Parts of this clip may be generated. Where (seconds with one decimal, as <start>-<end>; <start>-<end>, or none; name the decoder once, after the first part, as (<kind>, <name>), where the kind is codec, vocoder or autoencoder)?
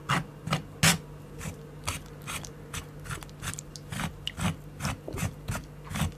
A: none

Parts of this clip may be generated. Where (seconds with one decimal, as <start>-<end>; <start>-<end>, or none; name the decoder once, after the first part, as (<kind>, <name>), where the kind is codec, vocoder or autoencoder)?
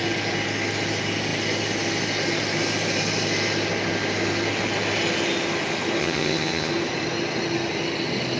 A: 6.0-6.7 (vocoder, HiFi-GAN)